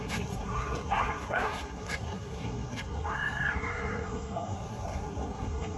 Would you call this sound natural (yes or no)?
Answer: no